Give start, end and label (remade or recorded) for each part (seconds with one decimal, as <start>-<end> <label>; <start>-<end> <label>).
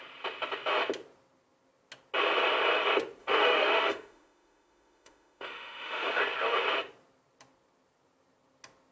0.0-3.2 recorded; 3.2-6.2 remade; 6.2-8.9 recorded